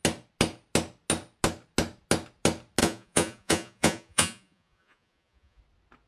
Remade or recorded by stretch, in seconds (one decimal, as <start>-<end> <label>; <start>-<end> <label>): 0.0-2.8 recorded; 2.8-5.6 remade; 5.6-6.1 recorded